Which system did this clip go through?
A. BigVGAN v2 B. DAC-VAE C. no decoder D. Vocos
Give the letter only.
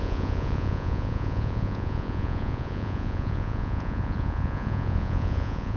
D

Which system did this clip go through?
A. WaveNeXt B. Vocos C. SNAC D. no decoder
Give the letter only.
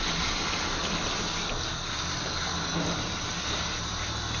D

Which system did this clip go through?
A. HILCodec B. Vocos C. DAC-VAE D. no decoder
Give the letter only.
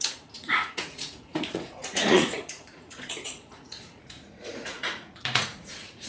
B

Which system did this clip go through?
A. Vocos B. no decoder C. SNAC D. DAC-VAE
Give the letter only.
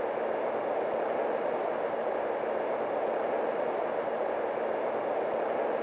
B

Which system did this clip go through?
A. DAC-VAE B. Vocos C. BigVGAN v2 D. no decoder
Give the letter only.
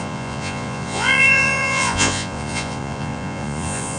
B